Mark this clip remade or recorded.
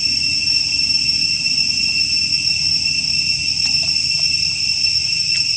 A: recorded